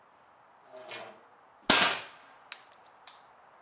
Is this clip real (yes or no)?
yes